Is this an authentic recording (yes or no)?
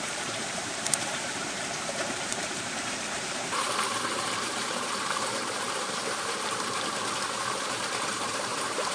no